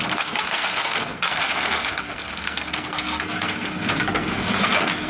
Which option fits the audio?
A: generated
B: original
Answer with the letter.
A